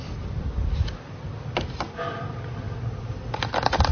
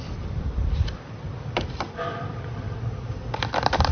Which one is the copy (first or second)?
second